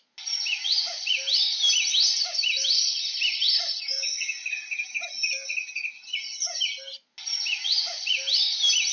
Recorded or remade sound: recorded